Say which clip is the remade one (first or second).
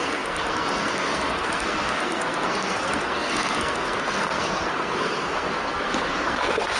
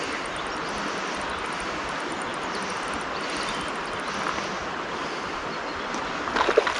first